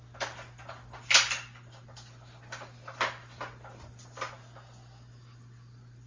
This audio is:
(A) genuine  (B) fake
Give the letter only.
A